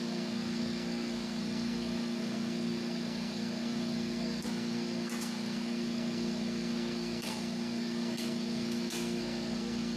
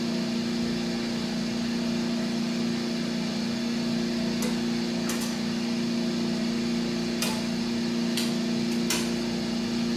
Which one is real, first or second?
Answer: second